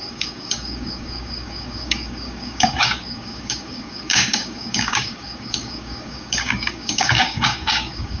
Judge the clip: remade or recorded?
remade